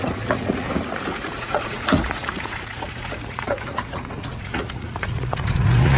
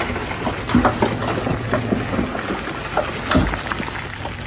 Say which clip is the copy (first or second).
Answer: first